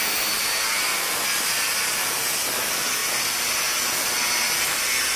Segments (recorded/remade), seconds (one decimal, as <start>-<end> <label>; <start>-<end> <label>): 0.0-5.2 recorded